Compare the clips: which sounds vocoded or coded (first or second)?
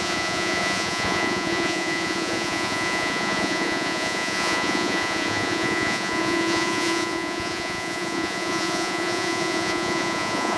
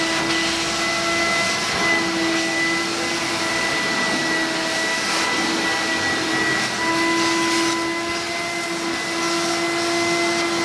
first